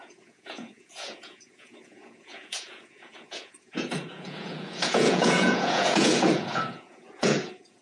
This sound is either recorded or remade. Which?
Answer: remade